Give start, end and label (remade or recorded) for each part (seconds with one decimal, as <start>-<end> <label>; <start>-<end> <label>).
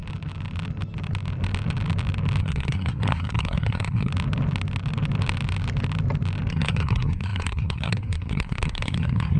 0.0-2.4 recorded; 2.4-4.1 remade; 4.1-6.5 recorded; 6.5-9.4 remade